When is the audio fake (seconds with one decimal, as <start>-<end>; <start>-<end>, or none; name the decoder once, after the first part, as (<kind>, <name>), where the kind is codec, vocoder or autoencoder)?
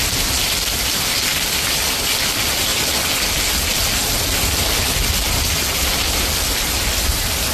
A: none